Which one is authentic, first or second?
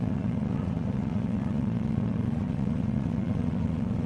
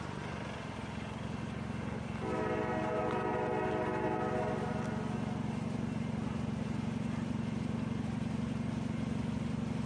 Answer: second